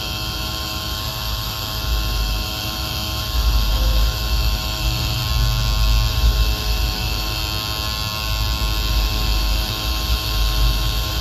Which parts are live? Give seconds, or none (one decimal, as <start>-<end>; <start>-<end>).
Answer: 5.2-6.1; 7.4-8.9